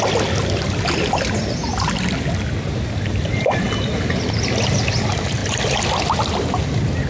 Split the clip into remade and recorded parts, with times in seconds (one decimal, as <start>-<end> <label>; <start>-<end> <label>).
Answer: 0.0-5.4 recorded; 5.4-6.6 remade; 6.6-7.1 recorded